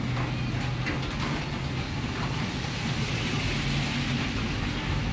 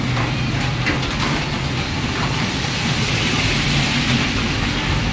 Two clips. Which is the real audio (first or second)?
first